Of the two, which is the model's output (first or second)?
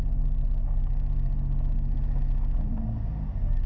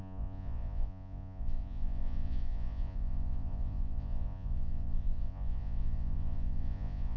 second